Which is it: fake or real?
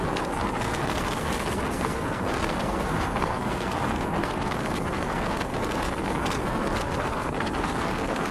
fake